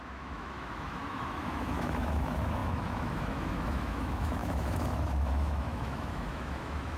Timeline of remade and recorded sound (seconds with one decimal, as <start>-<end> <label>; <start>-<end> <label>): 0.0-7.0 remade